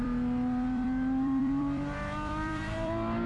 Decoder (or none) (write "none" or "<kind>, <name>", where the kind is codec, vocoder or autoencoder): vocoder, BigVGAN v2